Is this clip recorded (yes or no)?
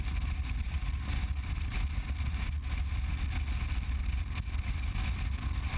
yes